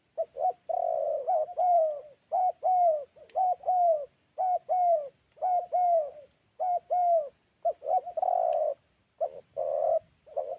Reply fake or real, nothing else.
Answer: real